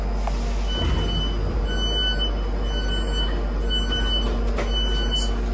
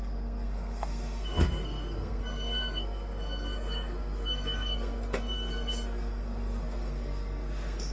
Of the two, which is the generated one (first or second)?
second